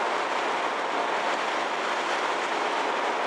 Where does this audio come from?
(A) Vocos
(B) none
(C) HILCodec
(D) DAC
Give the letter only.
B